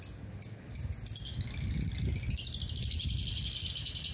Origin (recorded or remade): recorded